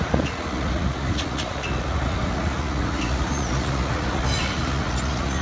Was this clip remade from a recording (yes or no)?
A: yes